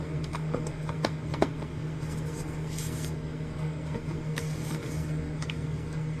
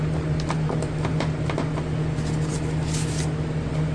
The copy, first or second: first